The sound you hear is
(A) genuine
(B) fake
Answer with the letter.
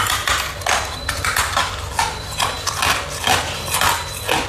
A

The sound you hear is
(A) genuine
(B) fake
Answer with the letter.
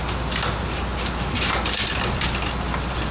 A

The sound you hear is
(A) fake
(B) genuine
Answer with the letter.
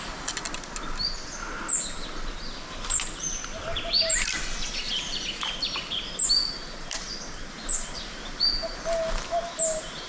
B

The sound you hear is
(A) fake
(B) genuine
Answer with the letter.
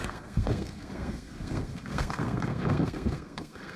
A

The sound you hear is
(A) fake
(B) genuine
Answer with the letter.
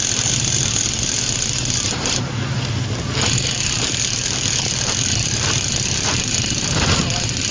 B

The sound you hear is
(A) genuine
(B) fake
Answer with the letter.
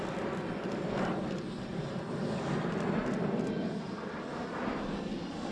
A